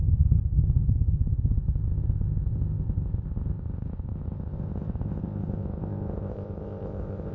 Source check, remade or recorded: remade